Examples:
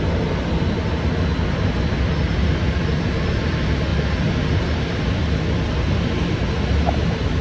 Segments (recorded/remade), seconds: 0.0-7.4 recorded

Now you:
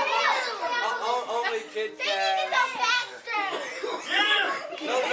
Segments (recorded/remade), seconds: 0.0-5.1 recorded

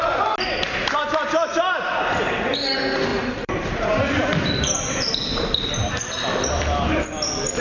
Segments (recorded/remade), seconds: 0.0-3.1 recorded; 3.1-6.9 remade; 6.9-7.6 recorded

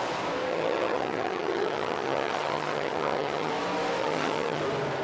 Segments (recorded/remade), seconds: 0.0-0.5 recorded; 0.5-3.5 remade; 3.5-4.0 recorded; 4.0-4.6 remade; 4.6-5.0 recorded

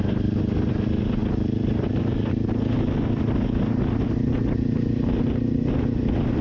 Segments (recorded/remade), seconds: 0.0-1.2 recorded; 1.2-2.3 remade; 2.3-6.4 recorded

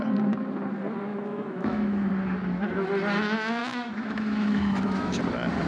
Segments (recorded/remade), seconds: 0.0-1.1 recorded; 1.1-2.1 remade; 2.1-3.6 recorded; 3.6-5.2 remade; 5.2-5.7 recorded